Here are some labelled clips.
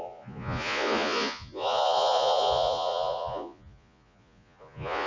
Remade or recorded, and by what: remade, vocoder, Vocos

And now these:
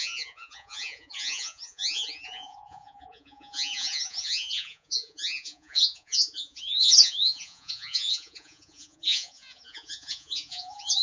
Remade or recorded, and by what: remade, vocoder, Vocos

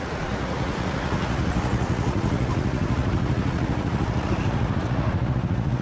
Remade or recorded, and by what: remade, vocoder, Vocos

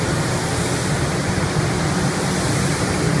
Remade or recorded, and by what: recorded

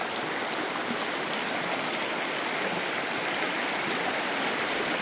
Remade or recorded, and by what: recorded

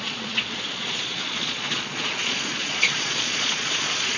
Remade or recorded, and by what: remade, vocoder, Vocos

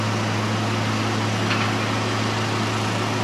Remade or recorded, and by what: recorded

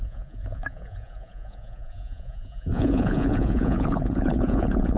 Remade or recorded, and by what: remade, vocoder, Vocos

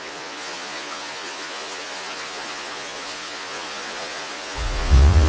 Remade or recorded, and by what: remade, vocoder, Vocos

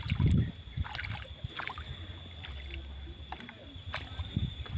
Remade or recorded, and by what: recorded